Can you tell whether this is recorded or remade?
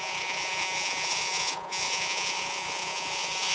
remade